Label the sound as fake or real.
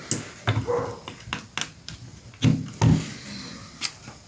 real